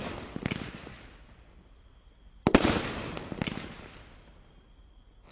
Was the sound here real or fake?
real